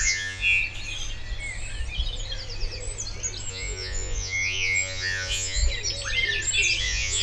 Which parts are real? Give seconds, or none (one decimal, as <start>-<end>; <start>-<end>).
0.6-3.5; 5.6-6.8

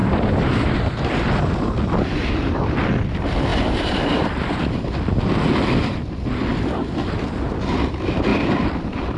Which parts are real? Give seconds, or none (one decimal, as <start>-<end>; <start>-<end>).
1.3-3.5; 4.8-8.3

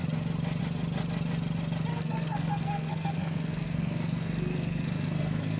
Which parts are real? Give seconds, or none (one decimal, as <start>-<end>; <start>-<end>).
0.0-1.9

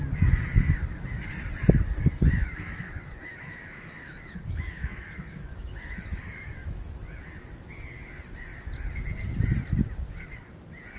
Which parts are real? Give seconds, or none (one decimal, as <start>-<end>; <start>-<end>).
0.0-3.3; 6.9-11.0

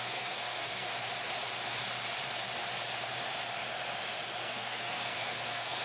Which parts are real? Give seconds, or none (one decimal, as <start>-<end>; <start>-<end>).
0.9-4.4

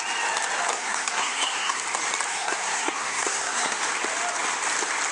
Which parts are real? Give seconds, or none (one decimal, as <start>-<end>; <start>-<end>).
0.0-0.7; 1.8-2.3; 3.8-5.1

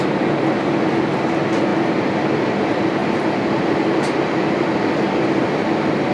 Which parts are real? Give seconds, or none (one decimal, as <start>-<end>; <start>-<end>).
0.0-6.1

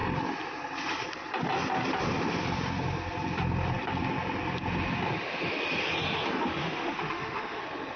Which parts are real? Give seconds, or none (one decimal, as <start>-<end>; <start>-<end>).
0.0-6.6; 7.6-8.0